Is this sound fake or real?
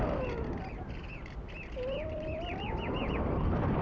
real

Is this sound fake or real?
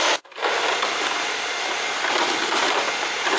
fake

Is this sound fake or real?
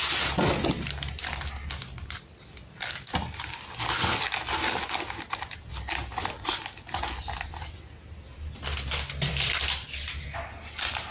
real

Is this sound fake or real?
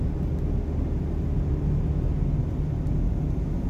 real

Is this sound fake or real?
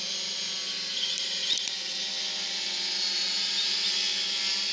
real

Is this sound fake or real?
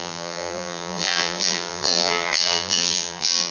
fake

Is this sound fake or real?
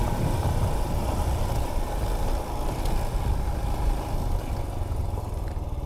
real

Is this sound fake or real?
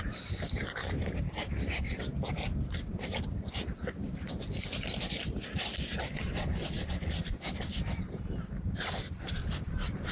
fake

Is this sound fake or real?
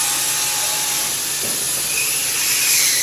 fake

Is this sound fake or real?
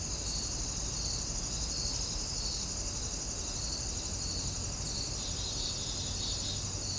real